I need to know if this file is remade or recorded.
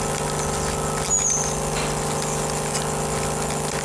recorded